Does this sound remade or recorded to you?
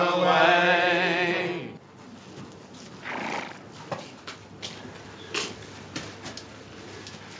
recorded